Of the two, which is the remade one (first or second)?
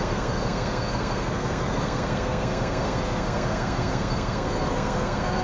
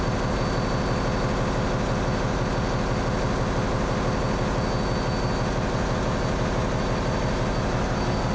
first